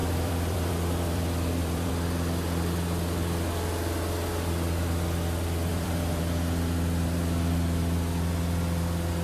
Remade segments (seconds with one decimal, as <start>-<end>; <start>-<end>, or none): 0.0-1.9; 5.7-6.2